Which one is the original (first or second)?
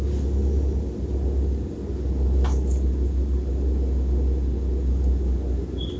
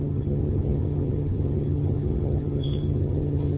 first